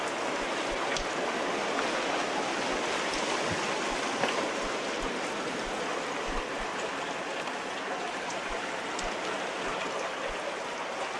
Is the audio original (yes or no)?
yes